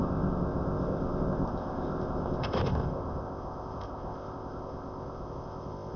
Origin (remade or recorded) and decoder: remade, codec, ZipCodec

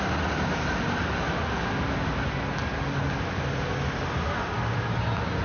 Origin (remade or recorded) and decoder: recorded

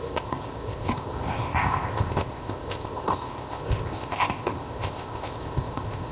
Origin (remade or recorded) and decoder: remade, codec, ZipCodec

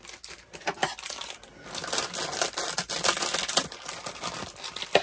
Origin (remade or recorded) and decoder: recorded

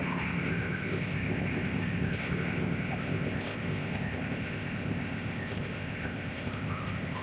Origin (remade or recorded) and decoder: remade, codec, ZipCodec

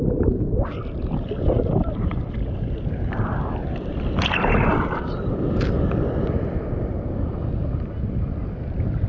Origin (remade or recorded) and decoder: recorded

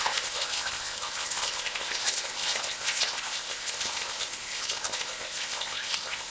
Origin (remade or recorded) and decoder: remade, codec, ZipCodec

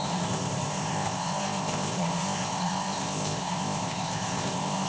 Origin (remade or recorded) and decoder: remade, codec, ZipCodec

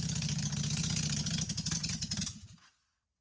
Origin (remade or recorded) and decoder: recorded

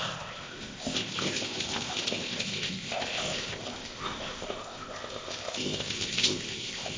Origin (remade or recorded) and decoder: remade, codec, ZipCodec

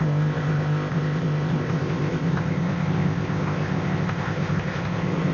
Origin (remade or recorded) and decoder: remade, codec, ZipCodec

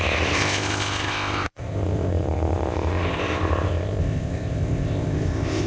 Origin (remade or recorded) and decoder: remade, codec, ZipCodec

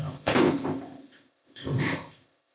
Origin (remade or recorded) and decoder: remade, codec, ZipCodec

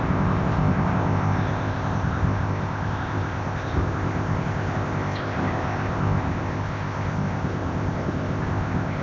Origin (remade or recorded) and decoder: remade, codec, ZipCodec